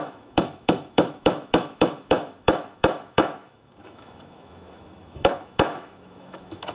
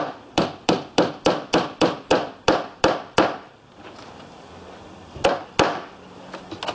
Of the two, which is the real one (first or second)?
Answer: second